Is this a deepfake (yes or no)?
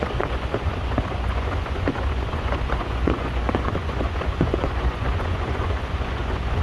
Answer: yes